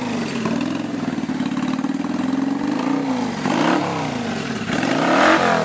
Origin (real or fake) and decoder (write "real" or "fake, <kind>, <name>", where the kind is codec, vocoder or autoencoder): real